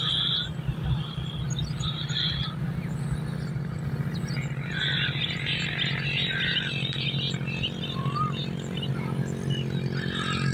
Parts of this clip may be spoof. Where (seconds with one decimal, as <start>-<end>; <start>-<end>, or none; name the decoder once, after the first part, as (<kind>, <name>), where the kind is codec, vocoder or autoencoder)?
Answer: none